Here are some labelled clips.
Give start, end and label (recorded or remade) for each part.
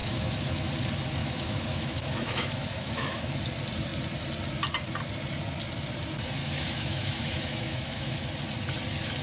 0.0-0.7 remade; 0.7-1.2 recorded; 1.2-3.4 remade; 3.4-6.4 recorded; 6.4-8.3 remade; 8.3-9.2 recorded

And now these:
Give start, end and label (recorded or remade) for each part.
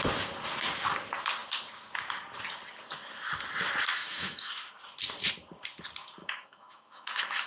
0.0-3.9 recorded; 3.9-4.5 remade; 4.5-6.2 recorded; 6.2-7.5 remade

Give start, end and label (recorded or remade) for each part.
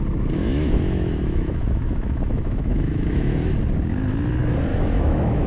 0.0-0.4 recorded; 0.4-3.5 remade; 3.5-4.7 recorded; 4.7-5.5 remade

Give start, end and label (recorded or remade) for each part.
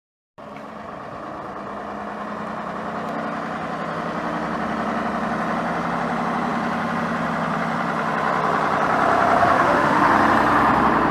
0.0-9.4 recorded; 9.4-10.1 remade; 10.1-11.1 recorded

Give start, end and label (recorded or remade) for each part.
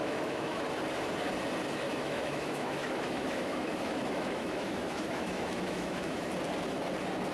0.0-0.6 remade; 0.6-1.9 recorded; 1.9-6.3 remade; 6.3-7.3 recorded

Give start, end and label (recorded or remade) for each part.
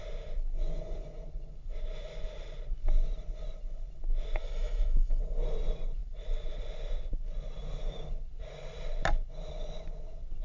0.0-4.4 recorded; 4.4-5.2 remade; 5.2-10.4 recorded